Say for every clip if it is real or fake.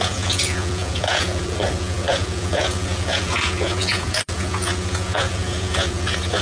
fake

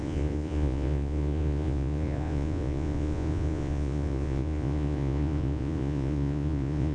fake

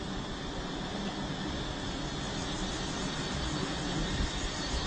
real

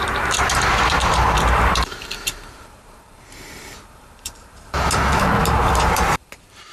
fake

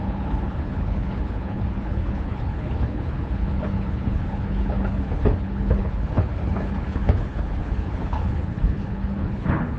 fake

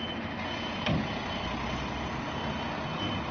real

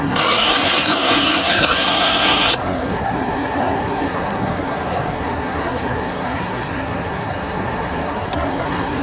fake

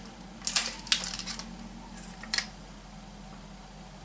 real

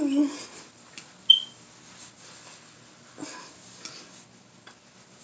real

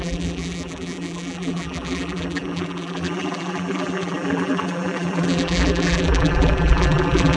fake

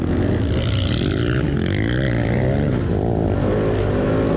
real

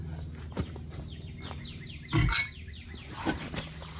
real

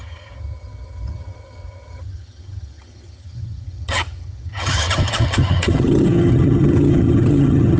fake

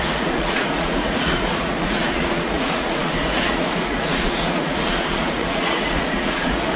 fake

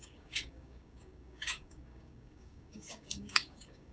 fake